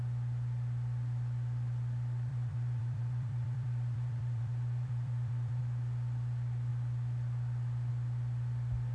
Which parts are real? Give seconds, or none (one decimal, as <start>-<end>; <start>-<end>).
0.0-2.3; 5.6-8.9